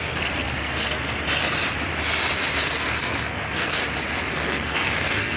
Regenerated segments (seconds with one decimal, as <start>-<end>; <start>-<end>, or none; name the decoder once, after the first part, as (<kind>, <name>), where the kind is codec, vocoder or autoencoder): 0.0-0.9 (codec, SNAC); 2.8-3.8; 4.3-5.4